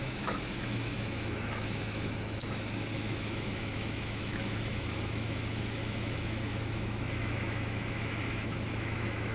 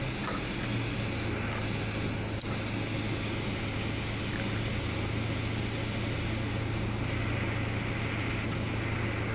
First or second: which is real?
second